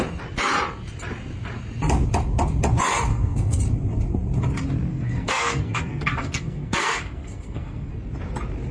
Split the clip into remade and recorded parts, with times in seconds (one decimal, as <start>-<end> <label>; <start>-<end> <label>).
0.0-3.1 recorded; 3.1-3.6 remade; 3.6-4.9 recorded; 4.9-7.9 remade; 7.9-8.7 recorded